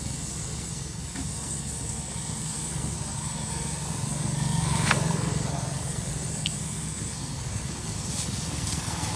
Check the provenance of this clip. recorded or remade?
remade